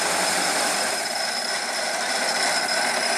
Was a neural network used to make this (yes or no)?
yes